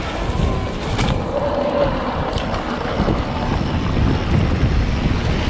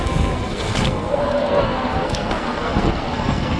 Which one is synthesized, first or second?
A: second